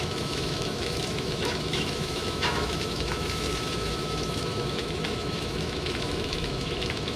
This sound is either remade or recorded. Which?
remade